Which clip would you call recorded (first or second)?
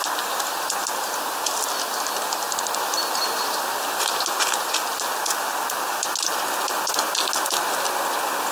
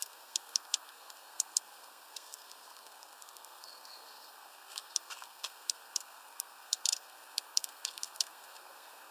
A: first